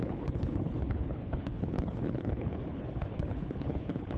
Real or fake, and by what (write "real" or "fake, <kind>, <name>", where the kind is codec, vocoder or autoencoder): fake, codec, HILCodec